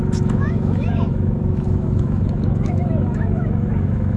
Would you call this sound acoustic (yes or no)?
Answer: no